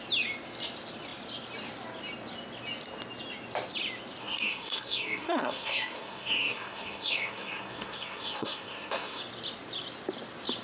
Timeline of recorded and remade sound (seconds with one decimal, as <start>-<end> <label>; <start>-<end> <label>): 0.0-4.2 recorded; 4.2-9.2 remade; 9.2-10.6 recorded